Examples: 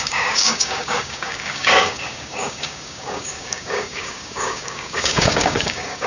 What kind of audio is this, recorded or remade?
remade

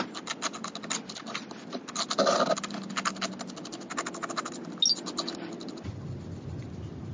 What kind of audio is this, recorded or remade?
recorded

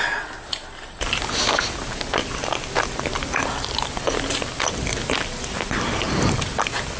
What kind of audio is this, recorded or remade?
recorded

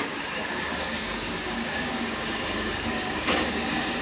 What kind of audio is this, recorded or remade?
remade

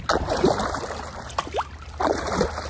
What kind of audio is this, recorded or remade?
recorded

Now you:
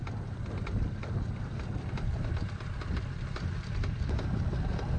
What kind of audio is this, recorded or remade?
recorded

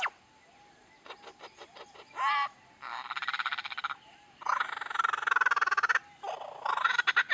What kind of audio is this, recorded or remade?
recorded